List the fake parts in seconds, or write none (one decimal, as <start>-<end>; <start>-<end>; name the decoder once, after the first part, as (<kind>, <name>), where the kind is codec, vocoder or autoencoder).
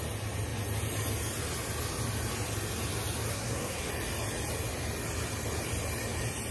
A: 3.3-3.9 (codec, SNAC)